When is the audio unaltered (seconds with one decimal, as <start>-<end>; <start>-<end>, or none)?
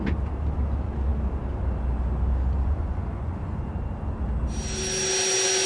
0.0-2.6; 3.7-5.7